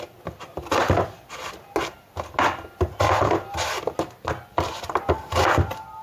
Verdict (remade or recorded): recorded